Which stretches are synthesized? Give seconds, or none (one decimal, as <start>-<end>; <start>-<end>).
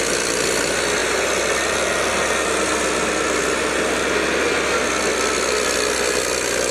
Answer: none